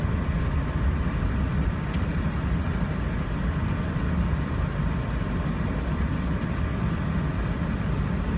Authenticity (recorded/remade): recorded